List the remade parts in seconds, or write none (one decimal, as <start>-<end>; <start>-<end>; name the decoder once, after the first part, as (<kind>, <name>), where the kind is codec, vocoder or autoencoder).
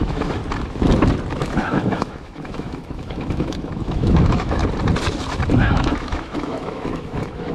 0.0-0.4 (autoencoder, DAC-VAE); 1.3-4.6; 5.6-7.5